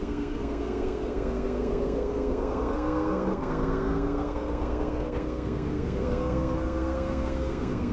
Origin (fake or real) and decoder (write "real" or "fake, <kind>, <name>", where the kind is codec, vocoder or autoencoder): fake, codec, SNAC